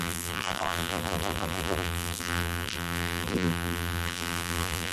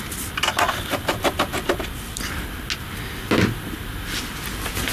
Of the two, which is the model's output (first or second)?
first